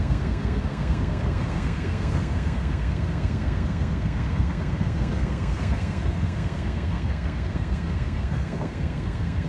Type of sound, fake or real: fake